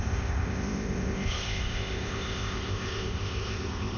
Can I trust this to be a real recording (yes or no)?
no